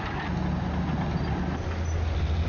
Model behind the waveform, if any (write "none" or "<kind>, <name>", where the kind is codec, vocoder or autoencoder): none